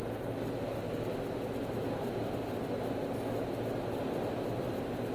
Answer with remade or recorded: recorded